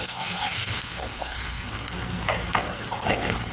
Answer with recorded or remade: remade